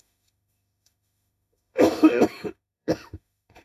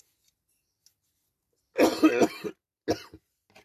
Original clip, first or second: second